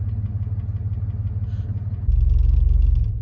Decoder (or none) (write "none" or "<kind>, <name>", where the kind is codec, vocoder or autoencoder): none